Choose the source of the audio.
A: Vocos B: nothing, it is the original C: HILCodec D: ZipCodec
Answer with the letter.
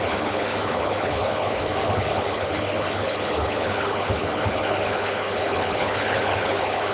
C